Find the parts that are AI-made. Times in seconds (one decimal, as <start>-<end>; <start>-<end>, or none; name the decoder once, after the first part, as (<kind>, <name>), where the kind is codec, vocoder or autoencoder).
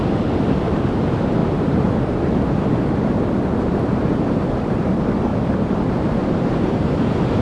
none